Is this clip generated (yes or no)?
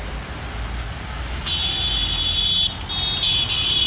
no